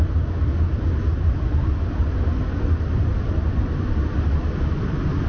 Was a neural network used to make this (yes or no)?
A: no